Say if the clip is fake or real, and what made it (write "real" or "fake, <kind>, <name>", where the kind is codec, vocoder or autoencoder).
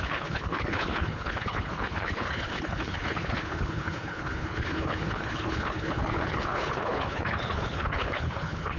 fake, codec, HILCodec